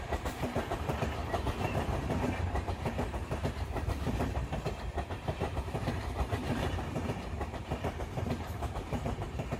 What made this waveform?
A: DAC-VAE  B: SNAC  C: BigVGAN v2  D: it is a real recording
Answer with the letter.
C